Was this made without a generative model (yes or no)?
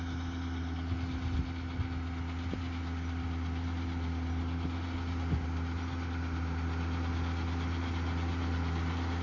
yes